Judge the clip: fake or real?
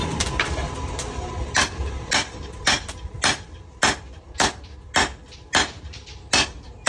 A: real